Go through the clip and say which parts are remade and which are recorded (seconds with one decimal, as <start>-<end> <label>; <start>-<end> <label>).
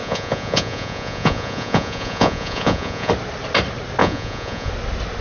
0.0-3.1 remade; 3.1-4.0 recorded; 4.0-4.7 remade; 4.7-5.2 recorded